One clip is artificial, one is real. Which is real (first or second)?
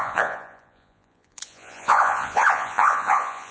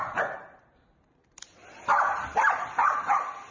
second